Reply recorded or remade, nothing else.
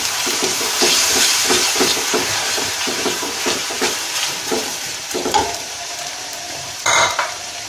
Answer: remade